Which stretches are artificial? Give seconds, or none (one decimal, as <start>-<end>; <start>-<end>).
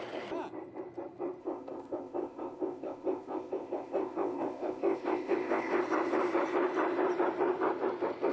1.4-5.8